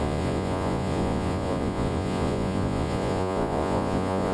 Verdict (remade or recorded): remade